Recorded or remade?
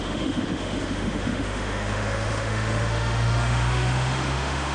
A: remade